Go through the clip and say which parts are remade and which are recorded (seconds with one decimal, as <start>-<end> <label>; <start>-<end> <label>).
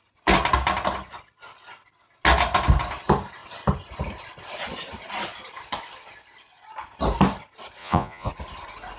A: 0.0-7.8 recorded; 7.8-8.3 remade; 8.3-9.0 recorded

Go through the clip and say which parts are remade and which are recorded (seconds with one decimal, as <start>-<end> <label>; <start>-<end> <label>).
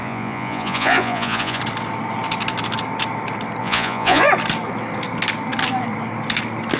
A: 0.0-1.6 remade; 1.6-3.6 recorded; 3.6-4.3 remade; 4.3-6.8 recorded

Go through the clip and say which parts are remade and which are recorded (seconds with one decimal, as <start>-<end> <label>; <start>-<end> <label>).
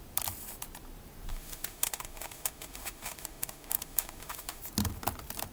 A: 0.0-1.3 recorded; 1.3-4.6 remade; 4.6-5.5 recorded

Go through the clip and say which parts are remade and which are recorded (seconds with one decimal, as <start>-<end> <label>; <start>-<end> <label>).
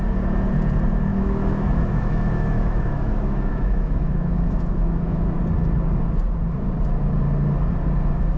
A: 0.0-1.1 recorded; 1.1-5.4 remade; 5.4-8.4 recorded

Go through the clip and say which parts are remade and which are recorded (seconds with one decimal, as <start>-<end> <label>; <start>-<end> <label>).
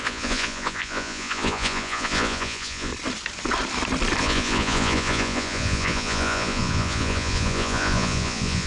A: 0.0-2.9 remade; 2.9-4.2 recorded; 4.2-8.7 remade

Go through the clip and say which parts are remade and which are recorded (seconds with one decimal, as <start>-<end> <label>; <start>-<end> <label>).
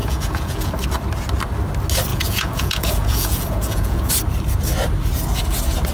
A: 0.0-0.7 remade; 0.7-2.1 recorded; 2.1-4.1 remade; 4.1-5.9 recorded